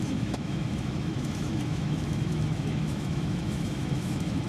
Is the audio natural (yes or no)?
no